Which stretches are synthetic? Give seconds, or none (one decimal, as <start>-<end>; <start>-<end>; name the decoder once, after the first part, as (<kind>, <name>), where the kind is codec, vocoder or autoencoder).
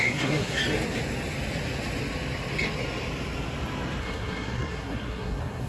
0.0-0.6 (codec, SNAC); 4.0-5.7